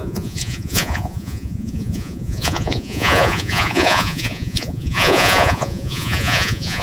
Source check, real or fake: fake